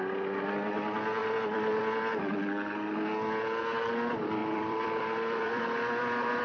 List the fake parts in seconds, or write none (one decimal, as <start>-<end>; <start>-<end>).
1.2-1.8; 4.4-5.6